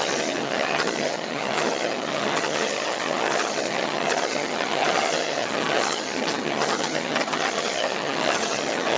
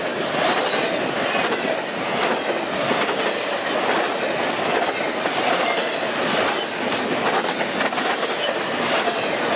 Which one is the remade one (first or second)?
first